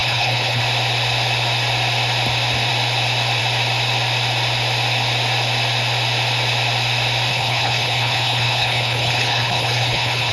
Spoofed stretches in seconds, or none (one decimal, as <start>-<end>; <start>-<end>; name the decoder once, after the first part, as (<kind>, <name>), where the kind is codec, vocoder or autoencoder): 0.0-0.6 (codec, HILCodec); 7.3-10.3